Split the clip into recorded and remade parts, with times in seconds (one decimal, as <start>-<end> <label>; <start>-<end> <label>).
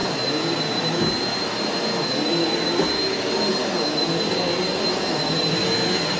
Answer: 0.0-6.2 recorded